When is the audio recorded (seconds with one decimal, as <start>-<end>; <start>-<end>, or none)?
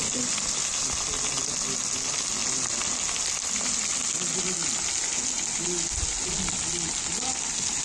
0.0-7.8